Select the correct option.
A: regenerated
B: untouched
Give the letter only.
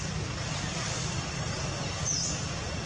B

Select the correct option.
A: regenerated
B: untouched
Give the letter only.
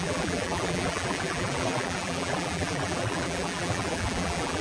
A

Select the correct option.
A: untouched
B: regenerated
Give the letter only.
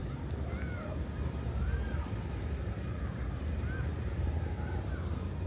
A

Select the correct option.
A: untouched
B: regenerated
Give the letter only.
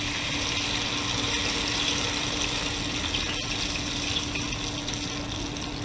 A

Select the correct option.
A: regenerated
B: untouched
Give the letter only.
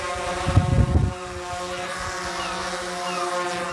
B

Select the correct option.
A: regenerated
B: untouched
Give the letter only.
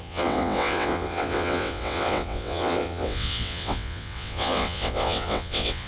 A